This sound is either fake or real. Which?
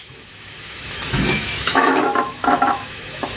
fake